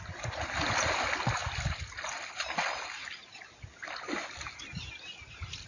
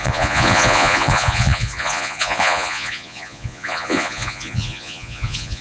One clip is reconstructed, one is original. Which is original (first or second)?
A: first